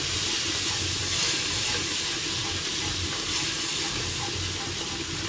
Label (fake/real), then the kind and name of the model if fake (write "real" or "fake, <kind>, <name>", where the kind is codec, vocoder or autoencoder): real